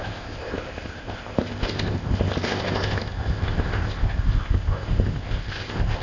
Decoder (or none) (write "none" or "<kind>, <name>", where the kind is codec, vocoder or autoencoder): codec, ZipCodec